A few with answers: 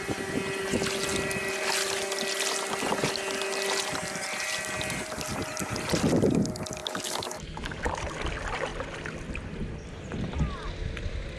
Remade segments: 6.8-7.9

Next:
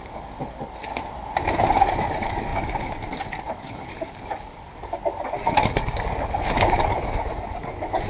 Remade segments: 0.0-0.9; 1.5-8.1

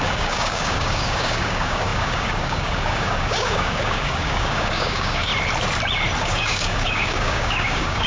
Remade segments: 0.0-5.3; 6.2-8.1

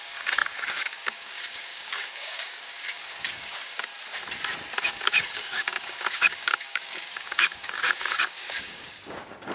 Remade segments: 0.0-3.9; 4.8-9.5

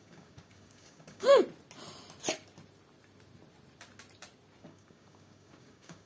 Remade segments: 0.0-1.3; 4.6-6.1

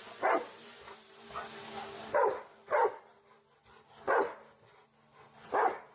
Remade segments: none

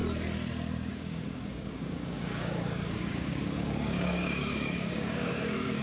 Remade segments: 0.9-5.8

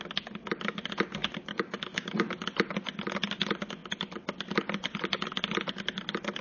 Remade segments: 1.5-2.3